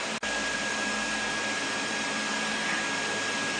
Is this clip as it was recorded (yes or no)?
yes